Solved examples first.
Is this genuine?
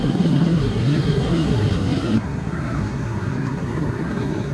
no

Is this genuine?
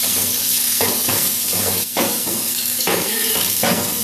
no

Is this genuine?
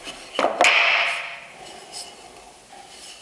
yes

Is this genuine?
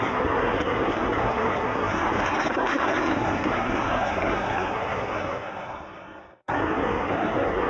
no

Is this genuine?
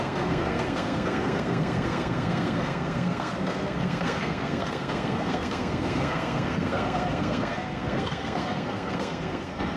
no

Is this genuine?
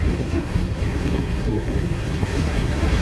no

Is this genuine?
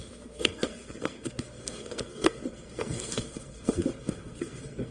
no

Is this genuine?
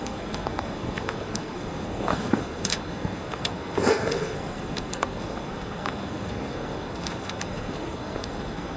no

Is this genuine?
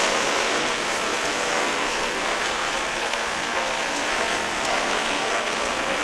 no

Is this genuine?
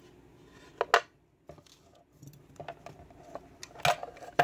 yes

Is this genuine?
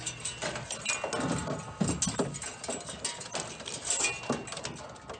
yes